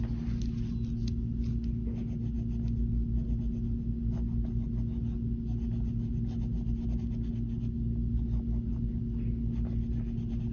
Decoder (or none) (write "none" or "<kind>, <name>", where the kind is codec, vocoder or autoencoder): none